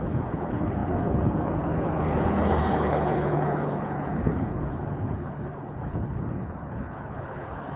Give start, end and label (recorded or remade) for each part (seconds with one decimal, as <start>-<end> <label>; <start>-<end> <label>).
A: 0.0-7.8 remade